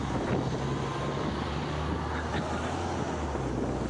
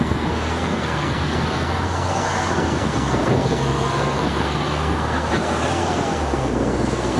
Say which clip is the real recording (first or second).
first